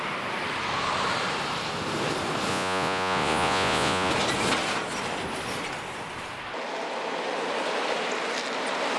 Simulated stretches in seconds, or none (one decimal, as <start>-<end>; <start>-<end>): 2.5-4.1